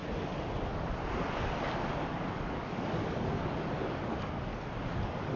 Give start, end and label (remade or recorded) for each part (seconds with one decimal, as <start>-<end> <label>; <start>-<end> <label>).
0.0-2.1 recorded; 2.1-4.5 remade; 4.5-5.0 recorded; 5.0-5.4 remade